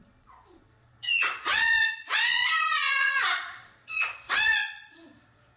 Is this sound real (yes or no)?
no